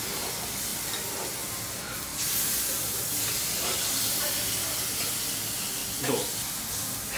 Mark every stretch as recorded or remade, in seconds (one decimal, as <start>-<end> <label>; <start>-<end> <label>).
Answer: 0.0-7.2 recorded